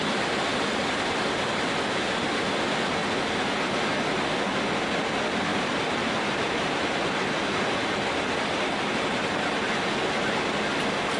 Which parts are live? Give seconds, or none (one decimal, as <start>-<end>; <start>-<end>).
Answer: 0.0-5.5; 7.0-11.2